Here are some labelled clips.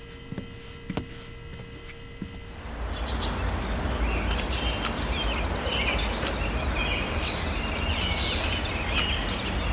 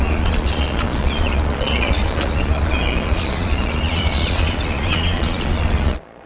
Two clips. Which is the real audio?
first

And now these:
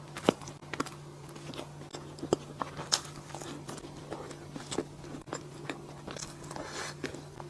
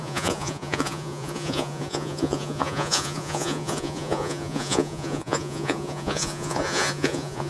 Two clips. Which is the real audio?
first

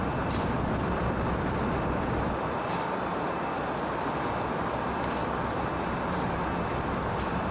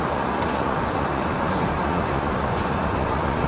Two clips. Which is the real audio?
first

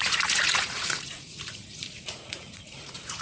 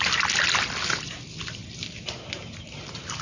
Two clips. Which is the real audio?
second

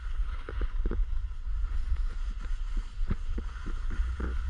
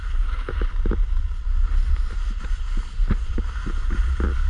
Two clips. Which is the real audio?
second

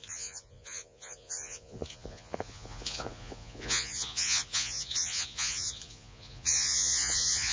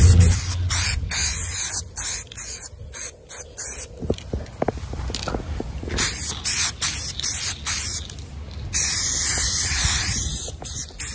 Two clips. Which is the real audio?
second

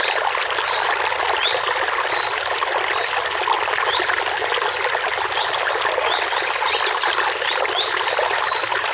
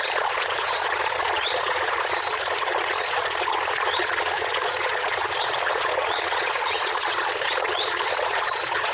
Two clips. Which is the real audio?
first